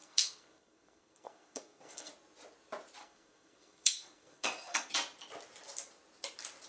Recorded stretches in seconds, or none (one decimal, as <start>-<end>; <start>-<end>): 2.1-3.0; 4.9-6.7